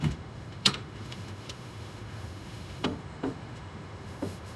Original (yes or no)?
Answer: no